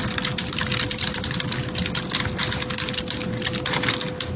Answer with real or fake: real